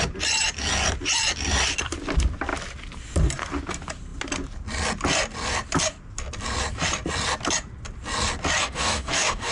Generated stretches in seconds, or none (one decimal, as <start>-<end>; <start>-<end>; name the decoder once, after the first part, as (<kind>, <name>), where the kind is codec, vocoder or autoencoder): 8.6-9.5 (codec, DAC)